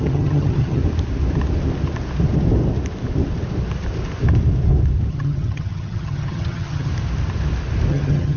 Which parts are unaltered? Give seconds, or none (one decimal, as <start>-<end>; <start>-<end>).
0.8-5.1; 6.9-7.9